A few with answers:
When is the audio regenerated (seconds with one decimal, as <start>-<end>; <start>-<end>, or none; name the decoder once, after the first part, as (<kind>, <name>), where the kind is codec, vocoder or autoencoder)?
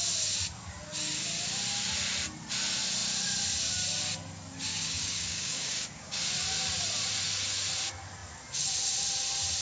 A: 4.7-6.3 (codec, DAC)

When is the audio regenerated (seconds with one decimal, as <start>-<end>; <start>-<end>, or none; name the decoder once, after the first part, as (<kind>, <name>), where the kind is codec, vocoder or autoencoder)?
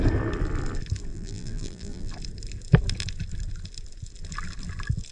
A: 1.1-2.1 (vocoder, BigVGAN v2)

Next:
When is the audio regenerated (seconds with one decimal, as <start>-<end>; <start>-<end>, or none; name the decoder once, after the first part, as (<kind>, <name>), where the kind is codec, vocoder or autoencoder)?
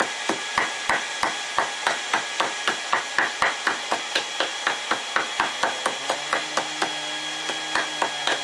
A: none